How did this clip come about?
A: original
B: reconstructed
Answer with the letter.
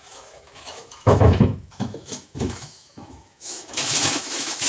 B